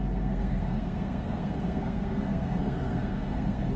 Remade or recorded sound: remade